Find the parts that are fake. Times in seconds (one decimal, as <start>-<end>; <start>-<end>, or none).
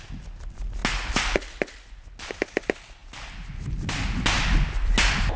none